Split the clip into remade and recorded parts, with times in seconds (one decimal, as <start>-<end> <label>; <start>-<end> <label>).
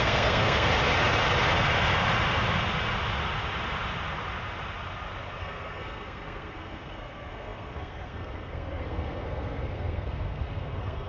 0.0-0.7 remade; 0.7-5.4 recorded; 5.4-11.1 remade